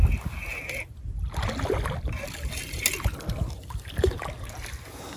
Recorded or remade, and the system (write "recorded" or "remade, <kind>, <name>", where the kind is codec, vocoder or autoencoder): recorded